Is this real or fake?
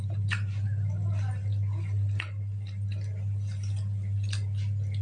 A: real